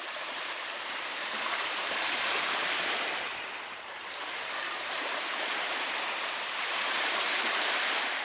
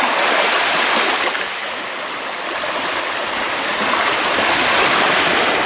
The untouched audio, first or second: second